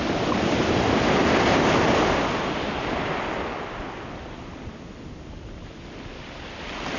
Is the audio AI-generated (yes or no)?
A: no